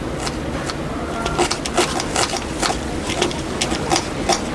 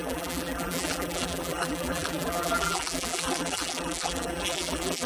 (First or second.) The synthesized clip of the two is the second